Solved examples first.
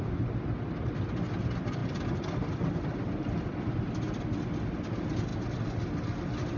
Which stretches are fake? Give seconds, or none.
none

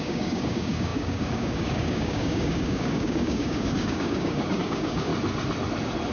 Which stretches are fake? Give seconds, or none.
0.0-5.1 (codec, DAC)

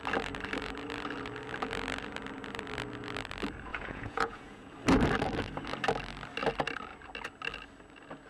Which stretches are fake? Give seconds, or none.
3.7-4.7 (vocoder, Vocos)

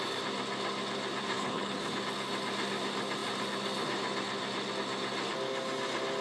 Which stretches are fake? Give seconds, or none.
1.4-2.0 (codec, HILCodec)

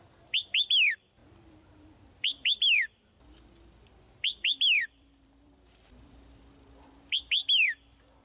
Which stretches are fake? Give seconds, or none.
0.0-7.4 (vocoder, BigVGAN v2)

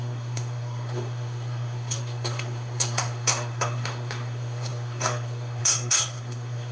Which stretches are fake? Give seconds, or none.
0.0-6.7 (codec, SNAC)

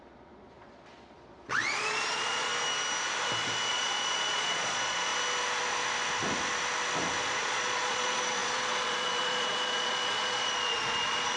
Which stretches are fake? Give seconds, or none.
0.0-2.5 (vocoder, Vocos); 3.7-5.1; 7.2-11.4

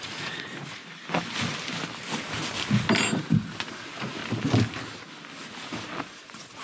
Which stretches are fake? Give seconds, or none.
0.0-0.8 (vocoder, Vocos); 3.7-4.2; 6.0-6.6